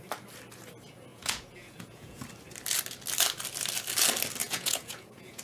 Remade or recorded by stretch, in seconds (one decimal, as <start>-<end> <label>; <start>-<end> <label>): 0.0-1.1 recorded; 1.1-2.2 remade; 2.2-4.4 recorded; 4.4-5.4 remade